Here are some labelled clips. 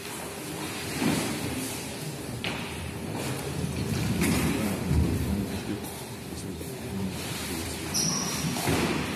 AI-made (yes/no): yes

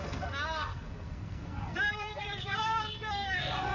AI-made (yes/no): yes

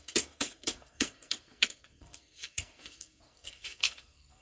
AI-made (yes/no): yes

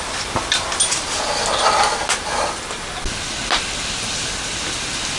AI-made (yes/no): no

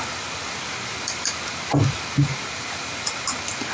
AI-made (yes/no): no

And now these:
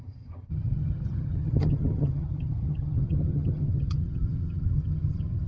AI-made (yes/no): yes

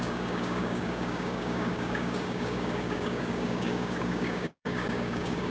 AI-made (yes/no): yes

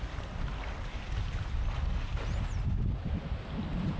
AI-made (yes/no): no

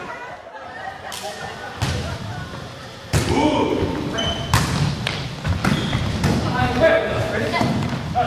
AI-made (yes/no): no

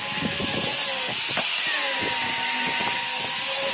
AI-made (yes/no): no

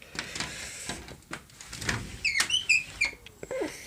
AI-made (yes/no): no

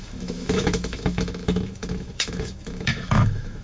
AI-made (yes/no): yes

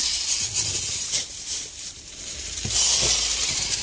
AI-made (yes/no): no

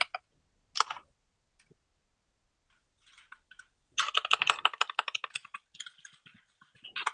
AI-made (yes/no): no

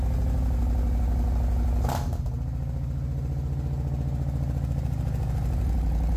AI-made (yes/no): no